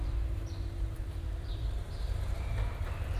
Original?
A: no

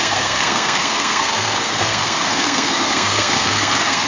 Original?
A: no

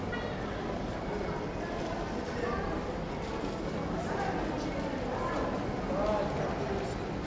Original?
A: yes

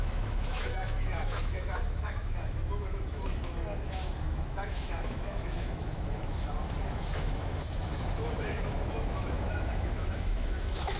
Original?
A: no